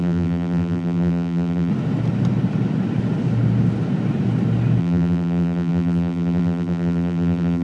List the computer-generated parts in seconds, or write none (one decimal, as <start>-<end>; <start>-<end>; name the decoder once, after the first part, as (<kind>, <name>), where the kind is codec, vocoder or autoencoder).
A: 0.0-1.7 (vocoder, BigVGAN v2); 4.8-7.6